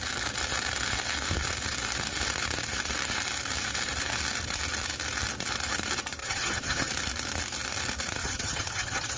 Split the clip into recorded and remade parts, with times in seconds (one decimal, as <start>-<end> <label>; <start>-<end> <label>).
0.0-6.2 recorded; 6.2-6.9 remade; 6.9-8.2 recorded; 8.2-9.2 remade